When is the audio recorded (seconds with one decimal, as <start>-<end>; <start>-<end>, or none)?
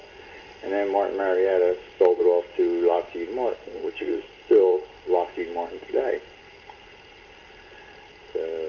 0.0-3.6; 4.4-8.7